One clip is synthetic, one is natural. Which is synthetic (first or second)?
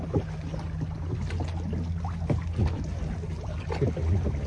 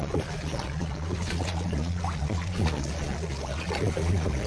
second